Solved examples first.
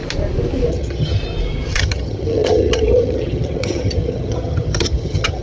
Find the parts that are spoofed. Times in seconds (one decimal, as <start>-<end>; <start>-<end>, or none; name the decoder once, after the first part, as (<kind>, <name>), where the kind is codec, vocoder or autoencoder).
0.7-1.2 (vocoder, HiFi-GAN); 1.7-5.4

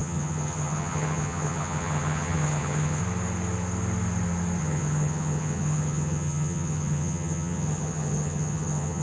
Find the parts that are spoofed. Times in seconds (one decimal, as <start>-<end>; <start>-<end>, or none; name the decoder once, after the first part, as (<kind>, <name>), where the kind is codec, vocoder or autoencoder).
0.0-3.0 (vocoder, HiFi-GAN); 4.6-9.0

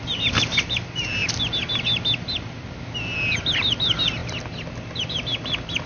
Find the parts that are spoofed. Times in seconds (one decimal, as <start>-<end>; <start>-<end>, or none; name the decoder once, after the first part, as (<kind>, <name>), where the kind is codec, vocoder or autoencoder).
none